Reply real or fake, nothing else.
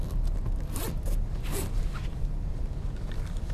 real